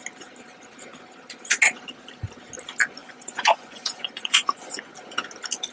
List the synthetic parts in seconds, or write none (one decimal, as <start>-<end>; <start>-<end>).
3.0-4.9

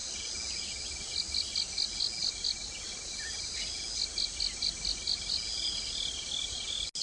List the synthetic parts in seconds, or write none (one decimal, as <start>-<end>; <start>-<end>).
none

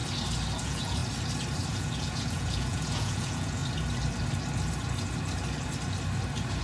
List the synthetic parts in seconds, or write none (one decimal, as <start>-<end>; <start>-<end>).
0.6-1.0; 1.7-3.6

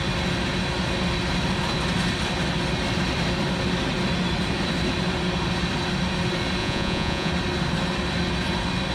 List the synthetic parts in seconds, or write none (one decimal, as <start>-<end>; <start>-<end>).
6.6-7.3

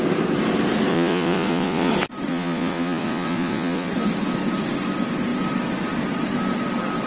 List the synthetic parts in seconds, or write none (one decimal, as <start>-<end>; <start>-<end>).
0.9-1.9; 2.3-3.9